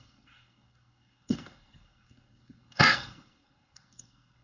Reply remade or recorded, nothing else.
remade